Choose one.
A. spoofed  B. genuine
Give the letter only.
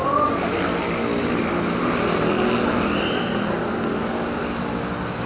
B